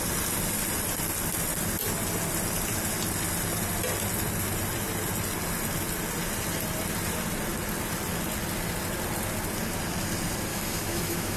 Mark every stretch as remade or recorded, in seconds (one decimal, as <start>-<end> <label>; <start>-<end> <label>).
0.0-10.5 recorded; 10.5-11.4 remade